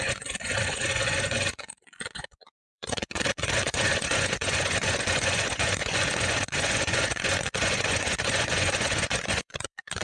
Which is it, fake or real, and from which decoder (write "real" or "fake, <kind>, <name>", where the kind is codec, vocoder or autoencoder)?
fake, vocoder, Vocos